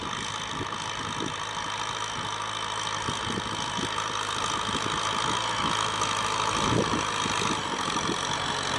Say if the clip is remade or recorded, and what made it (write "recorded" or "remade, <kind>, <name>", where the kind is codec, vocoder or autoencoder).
recorded